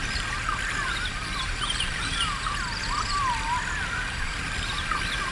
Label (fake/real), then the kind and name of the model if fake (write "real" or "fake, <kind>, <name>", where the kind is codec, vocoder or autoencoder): real